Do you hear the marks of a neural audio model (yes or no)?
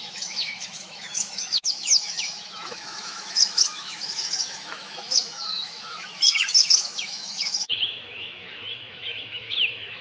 yes